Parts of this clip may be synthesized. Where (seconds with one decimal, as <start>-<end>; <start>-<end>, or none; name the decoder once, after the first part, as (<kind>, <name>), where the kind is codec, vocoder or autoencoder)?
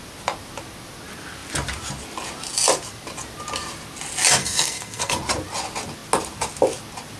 4.4-5.2 (codec, SNAC)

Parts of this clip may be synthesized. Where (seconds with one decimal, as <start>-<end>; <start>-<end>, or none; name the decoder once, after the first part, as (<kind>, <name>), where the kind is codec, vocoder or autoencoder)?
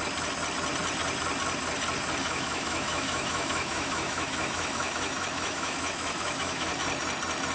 2.2-6.7 (autoencoder, DAC-VAE)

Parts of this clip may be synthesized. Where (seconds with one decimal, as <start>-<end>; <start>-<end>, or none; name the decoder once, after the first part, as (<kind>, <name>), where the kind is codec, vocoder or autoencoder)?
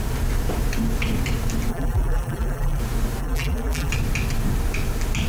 1.7-2.8 (vocoder, BigVGAN v2); 3.2-3.9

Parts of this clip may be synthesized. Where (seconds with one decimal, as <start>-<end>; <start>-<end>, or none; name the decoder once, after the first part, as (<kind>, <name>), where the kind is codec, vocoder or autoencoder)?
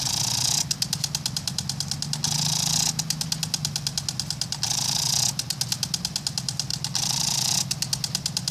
none